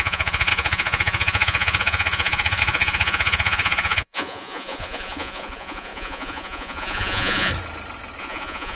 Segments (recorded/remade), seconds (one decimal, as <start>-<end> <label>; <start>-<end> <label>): 0.0-7.5 remade; 7.5-8.2 recorded; 8.2-8.8 remade